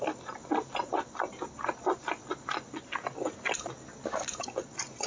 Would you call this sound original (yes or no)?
yes